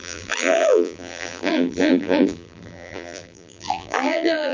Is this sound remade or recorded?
remade